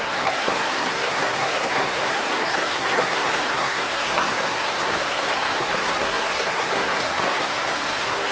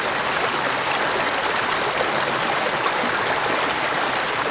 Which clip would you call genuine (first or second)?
second